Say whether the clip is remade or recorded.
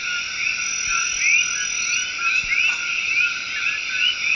recorded